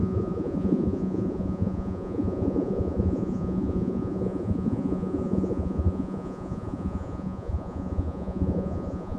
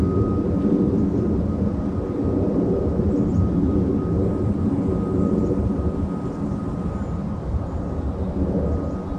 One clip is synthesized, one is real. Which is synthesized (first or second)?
first